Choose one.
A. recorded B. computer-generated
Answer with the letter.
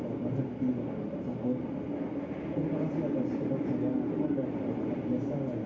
A